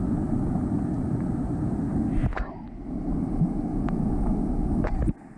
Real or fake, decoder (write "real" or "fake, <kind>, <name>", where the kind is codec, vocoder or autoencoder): real